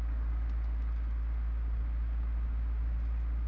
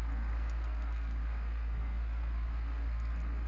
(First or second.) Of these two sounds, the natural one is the first